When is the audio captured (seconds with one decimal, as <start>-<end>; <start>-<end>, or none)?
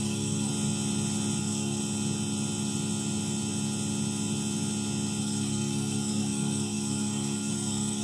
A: 0.5-1.4; 1.8-5.2